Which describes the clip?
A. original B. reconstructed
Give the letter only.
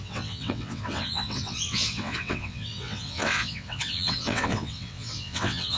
B